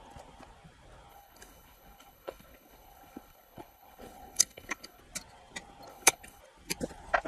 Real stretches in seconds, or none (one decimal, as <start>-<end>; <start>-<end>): 0.0-1.1; 5.0-5.9; 6.4-7.3